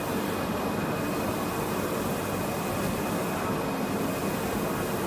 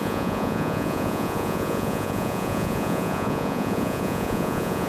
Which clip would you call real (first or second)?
first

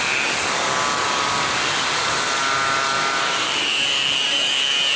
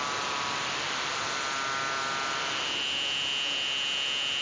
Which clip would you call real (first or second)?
second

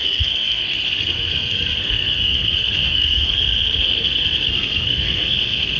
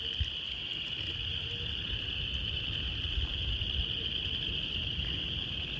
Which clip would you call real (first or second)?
second